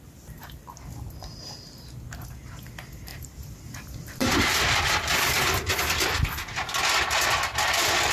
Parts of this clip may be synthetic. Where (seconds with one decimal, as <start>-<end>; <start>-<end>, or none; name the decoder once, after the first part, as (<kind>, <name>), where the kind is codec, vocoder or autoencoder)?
3.1-5.7 (vocoder, BigVGAN v2)